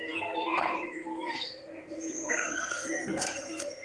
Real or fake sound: fake